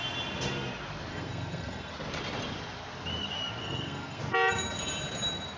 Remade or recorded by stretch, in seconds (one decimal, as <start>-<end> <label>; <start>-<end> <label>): 0.0-1.1 recorded; 1.1-1.9 remade; 1.9-3.6 recorded; 3.6-4.2 remade; 4.2-5.6 recorded